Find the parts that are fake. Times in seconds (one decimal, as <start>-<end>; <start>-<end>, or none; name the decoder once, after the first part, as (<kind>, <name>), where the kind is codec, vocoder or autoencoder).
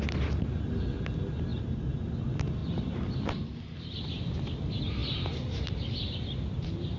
1.5-2.1 (vocoder, BigVGAN v2); 2.6-3.5; 5.0-6.1